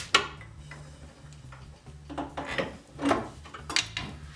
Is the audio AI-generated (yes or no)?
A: no